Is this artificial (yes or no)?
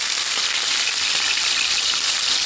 no